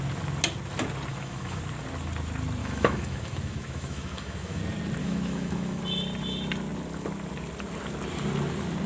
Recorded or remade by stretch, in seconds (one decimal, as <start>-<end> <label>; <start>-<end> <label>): 0.0-1.1 recorded; 1.1-1.6 remade; 1.6-2.6 recorded; 2.6-4.6 remade; 4.6-5.0 recorded; 5.0-5.8 remade; 5.8-8.9 recorded